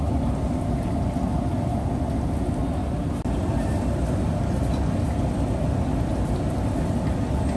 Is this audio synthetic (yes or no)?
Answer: no